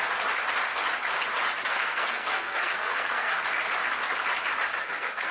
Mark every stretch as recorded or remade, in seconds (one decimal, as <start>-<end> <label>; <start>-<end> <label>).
0.0-1.7 recorded; 1.7-3.5 remade; 3.5-4.8 recorded; 4.8-5.3 remade